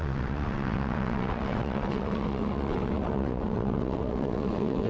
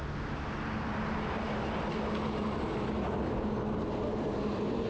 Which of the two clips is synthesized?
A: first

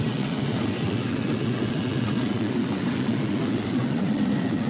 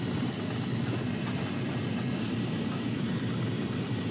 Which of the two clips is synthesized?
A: first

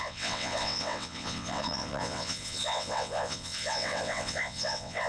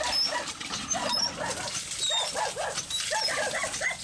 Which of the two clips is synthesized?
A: first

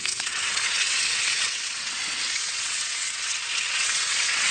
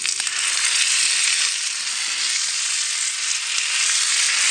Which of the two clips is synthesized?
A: first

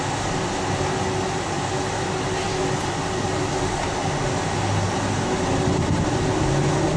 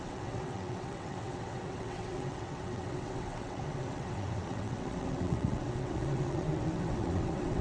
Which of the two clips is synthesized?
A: second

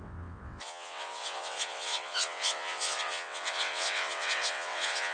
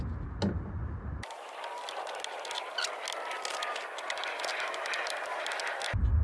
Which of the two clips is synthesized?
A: first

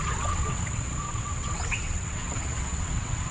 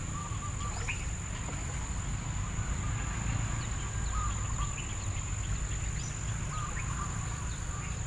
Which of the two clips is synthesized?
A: first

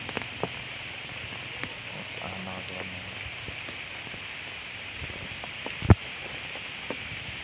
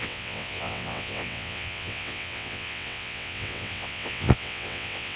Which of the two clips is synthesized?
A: second